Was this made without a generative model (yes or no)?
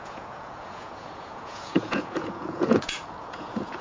no